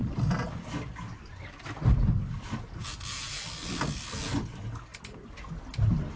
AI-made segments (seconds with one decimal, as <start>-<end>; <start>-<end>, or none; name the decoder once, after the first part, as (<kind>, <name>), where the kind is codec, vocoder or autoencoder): none